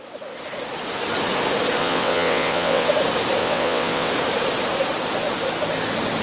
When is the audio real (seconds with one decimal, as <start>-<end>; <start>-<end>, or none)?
0.0-1.8; 2.9-3.4; 4.1-6.2